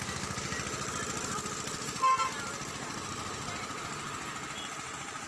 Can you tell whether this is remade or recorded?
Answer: recorded